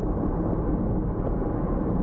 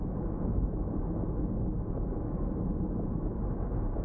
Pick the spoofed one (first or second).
second